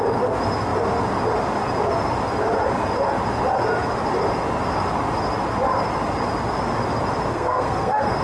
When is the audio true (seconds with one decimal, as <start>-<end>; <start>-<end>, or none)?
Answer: 0.0-7.3